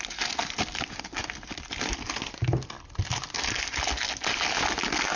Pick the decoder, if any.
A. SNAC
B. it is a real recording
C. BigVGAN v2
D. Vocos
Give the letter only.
B